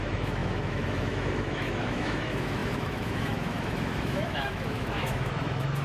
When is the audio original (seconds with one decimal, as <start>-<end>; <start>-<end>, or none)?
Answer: none